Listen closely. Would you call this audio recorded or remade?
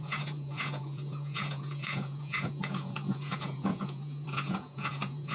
remade